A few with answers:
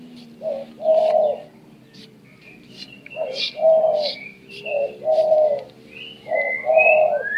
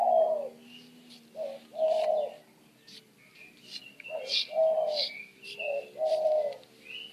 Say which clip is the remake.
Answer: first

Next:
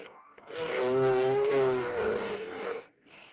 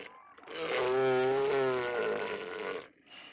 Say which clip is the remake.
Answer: first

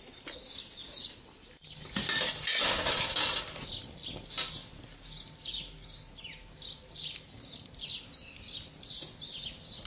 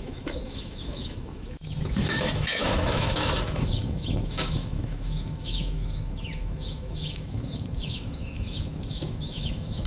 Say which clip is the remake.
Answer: second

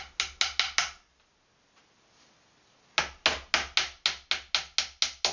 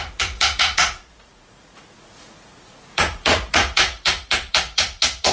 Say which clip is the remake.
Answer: second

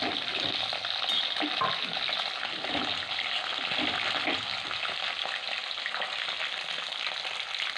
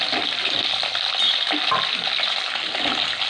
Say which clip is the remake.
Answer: second